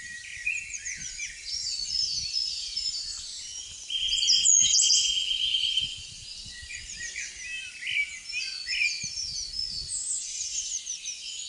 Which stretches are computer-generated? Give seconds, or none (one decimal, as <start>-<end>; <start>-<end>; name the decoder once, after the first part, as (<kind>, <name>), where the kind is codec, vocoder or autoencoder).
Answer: 0.0-7.3 (vocoder, Vocos); 8.4-11.5